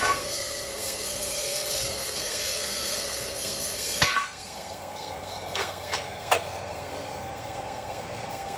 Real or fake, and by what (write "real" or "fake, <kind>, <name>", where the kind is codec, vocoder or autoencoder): fake, codec, SNAC